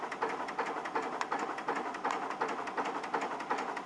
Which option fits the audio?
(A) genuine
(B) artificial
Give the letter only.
A